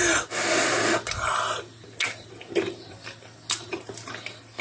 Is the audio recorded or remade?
recorded